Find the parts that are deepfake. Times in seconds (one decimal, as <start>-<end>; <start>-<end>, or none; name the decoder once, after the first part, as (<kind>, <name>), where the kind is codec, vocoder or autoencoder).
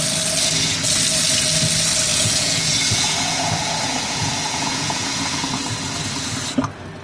2.1-5.5 (vocoder, Vocos)